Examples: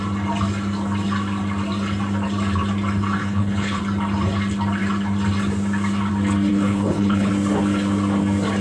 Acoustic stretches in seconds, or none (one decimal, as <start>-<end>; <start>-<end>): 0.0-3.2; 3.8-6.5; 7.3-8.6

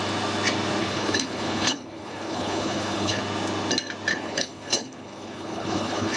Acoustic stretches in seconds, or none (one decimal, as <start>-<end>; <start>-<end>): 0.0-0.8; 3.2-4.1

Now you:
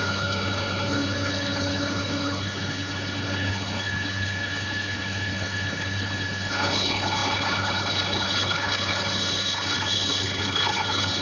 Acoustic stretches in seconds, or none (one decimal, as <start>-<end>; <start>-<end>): none